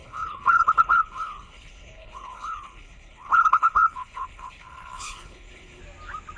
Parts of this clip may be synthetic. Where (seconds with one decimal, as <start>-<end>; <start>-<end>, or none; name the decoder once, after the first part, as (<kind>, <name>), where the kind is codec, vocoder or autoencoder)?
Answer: 0.0-5.8 (codec, HILCodec)